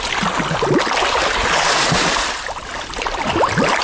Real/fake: real